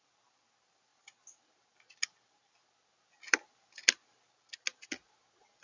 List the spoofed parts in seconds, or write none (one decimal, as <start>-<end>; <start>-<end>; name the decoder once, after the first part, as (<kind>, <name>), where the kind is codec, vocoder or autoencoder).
none